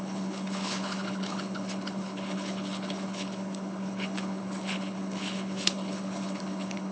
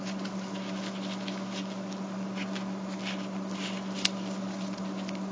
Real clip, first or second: second